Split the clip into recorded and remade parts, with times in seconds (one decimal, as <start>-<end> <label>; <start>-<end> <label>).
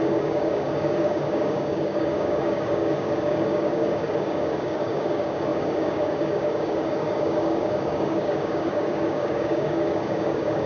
0.0-10.7 remade